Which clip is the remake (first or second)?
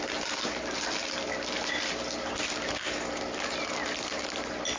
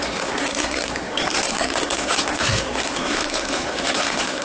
second